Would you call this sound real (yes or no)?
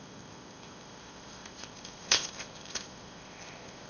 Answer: no